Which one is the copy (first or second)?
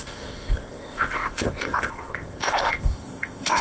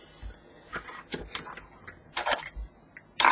first